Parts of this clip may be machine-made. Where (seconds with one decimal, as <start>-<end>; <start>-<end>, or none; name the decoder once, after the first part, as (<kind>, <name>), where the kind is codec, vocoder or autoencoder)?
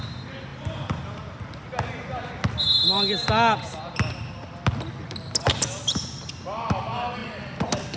none